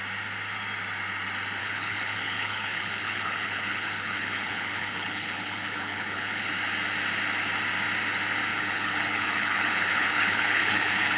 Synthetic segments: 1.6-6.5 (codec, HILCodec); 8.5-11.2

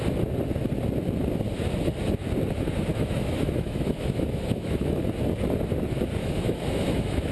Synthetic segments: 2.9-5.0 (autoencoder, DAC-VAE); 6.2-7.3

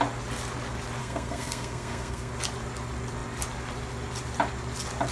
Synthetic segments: 1.0-2.3 (codec, SNAC)